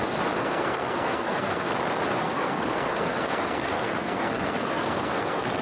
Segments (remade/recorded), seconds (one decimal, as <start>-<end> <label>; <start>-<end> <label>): 0.0-0.4 recorded; 0.4-1.7 remade; 1.7-2.1 recorded; 2.1-5.6 remade